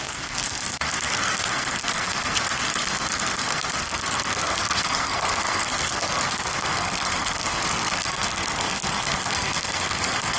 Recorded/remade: remade